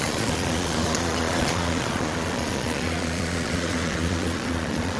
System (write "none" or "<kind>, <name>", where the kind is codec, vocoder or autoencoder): vocoder, Vocos